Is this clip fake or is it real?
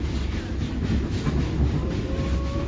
real